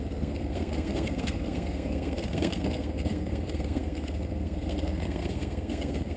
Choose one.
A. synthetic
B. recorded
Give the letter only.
A